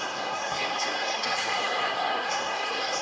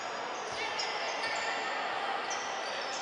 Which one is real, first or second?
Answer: second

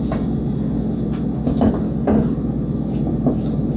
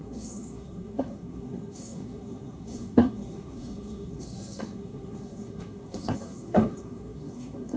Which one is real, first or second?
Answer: first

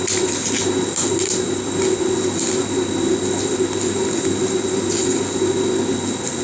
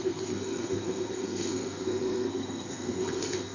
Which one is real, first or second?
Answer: first